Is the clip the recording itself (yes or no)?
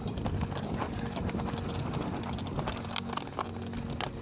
yes